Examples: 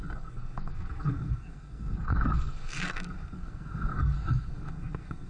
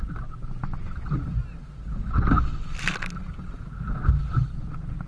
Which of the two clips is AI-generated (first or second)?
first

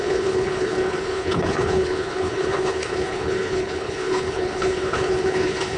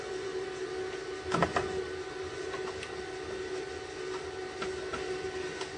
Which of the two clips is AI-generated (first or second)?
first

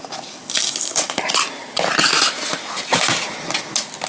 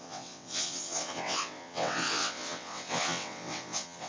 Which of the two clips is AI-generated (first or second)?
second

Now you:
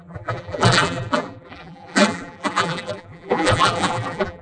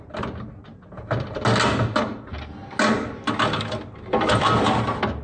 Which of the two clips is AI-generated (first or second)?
first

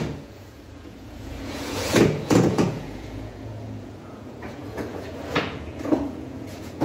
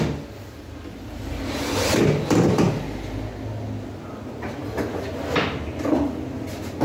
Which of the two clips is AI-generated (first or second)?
first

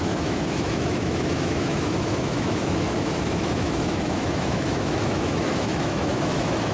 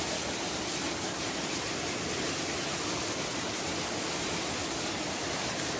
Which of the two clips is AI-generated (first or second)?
first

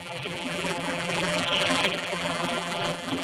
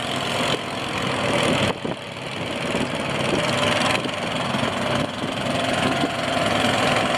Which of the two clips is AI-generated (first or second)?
first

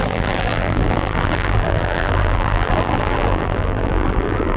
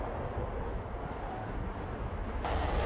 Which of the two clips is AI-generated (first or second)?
first